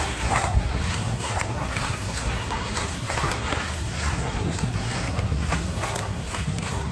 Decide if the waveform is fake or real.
fake